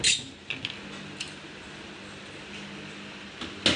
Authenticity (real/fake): real